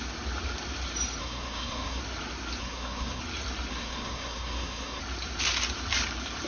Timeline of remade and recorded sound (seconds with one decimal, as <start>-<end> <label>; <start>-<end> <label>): 0.0-1.2 recorded; 1.2-2.0 remade; 2.0-2.6 recorded; 2.6-3.2 remade; 3.2-3.7 recorded; 3.7-5.0 remade; 5.0-6.5 recorded